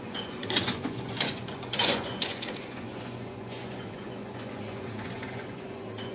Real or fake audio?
fake